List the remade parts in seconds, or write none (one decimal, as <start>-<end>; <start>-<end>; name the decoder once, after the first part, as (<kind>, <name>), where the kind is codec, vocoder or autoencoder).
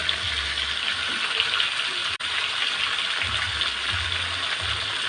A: 2.0-2.8 (vocoder, BigVGAN v2)